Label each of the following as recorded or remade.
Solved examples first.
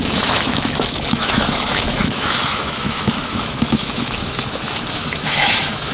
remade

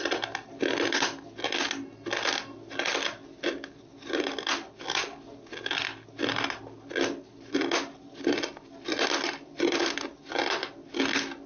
recorded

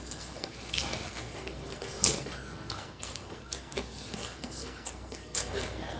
remade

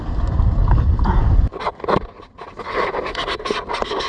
recorded